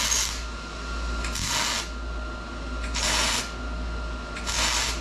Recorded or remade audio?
recorded